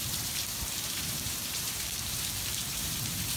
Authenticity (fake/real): fake